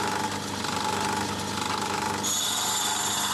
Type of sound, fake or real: real